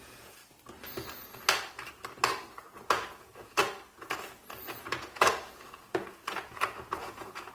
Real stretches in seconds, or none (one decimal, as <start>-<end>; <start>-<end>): 0.4-2.8; 3.6-4.5

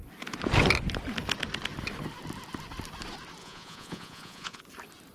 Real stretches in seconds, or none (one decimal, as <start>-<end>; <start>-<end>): 0.0-3.4; 4.6-5.1

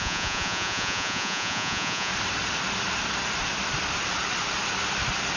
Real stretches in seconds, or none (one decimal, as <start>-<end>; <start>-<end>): 2.1-5.4